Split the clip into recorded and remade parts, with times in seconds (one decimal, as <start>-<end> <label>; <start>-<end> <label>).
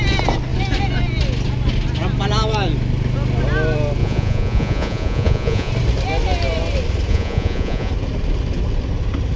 0.0-4.0 recorded; 4.0-5.7 remade; 5.7-7.1 recorded; 7.1-7.9 remade; 7.9-9.4 recorded